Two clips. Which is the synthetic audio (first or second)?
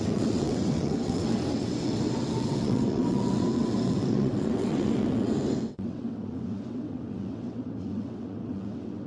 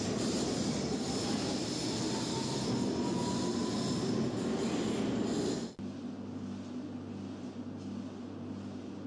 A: first